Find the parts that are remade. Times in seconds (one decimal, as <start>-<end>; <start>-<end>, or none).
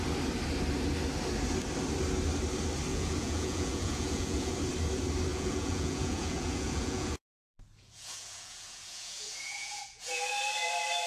2.9-4.5; 5.3-10.3